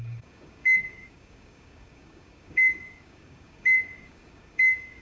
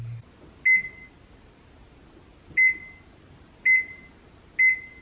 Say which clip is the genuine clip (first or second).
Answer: second